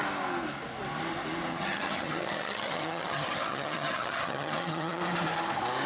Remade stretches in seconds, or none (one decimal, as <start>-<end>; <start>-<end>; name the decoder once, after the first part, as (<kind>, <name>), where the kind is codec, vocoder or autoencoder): 1.5-5.0 (vocoder, HiFi-GAN)